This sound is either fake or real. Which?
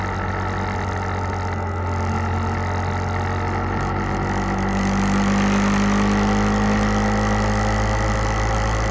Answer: real